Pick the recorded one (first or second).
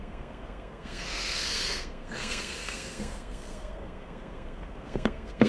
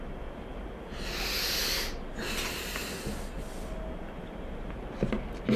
second